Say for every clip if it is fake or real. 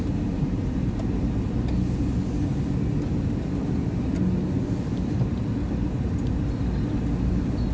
real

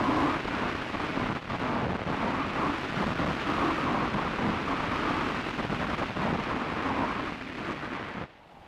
real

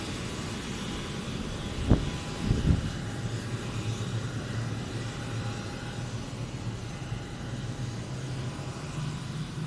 real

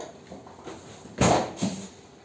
real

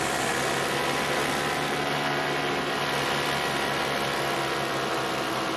real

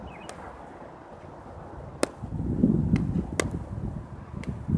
real